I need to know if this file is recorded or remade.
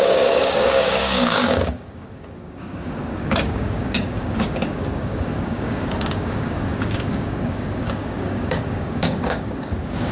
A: remade